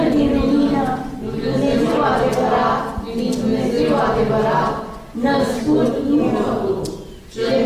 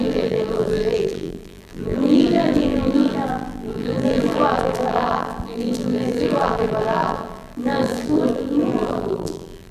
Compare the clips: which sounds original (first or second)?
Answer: first